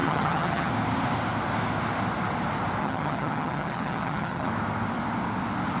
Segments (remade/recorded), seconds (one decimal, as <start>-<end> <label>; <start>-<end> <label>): 0.0-0.7 remade; 0.7-2.8 recorded; 2.8-4.5 remade; 4.5-5.8 recorded